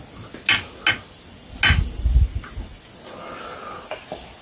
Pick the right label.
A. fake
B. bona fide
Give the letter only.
B